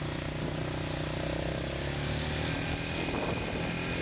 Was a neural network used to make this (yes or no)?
no